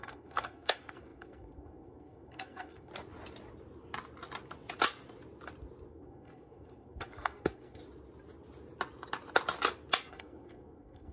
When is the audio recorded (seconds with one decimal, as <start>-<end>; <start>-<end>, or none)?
2.9-5.9; 7.8-10.1